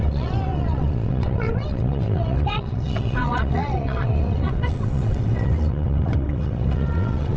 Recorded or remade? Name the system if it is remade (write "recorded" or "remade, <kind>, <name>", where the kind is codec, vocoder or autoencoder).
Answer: remade, vocoder, WaveNeXt